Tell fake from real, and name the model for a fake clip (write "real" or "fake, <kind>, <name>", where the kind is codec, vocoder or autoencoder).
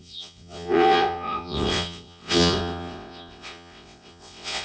fake, vocoder, WaveNeXt